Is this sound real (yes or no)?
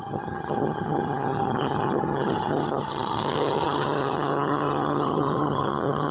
no